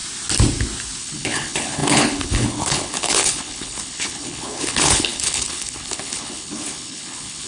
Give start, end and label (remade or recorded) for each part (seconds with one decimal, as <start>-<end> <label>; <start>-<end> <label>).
0.0-1.0 recorded; 1.0-7.5 remade